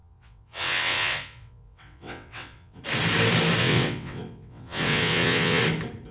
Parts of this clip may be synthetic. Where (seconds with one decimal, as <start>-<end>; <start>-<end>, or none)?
0.0-2.8; 3.6-5.6